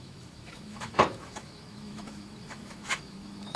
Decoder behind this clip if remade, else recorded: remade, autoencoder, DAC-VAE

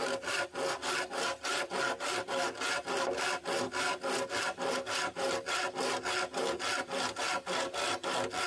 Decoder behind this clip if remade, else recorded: recorded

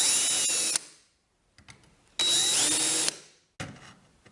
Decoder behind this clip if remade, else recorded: recorded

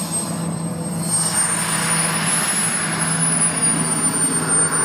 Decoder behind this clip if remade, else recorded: recorded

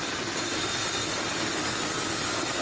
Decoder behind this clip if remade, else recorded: remade, vocoder, BigVGAN v2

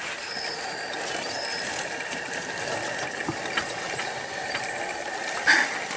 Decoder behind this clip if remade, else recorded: recorded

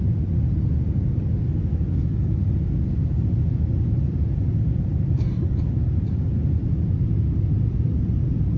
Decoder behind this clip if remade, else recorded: recorded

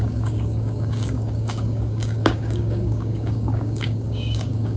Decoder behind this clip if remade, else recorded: remade, codec, DAC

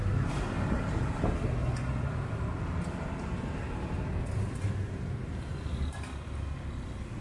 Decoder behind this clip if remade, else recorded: recorded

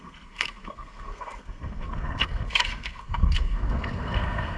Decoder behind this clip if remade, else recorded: remade, codec, SNAC